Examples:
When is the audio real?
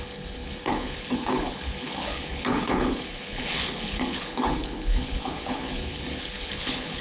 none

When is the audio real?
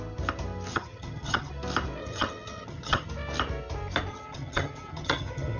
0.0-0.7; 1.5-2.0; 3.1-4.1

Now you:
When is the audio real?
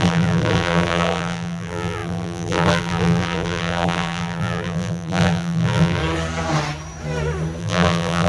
6.0-7.6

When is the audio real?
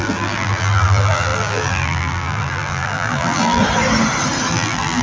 3.6-4.5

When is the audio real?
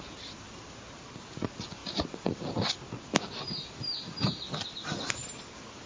0.0-5.9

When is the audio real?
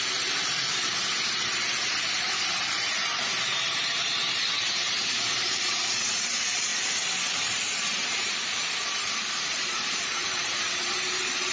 0.9-3.7; 6.7-7.3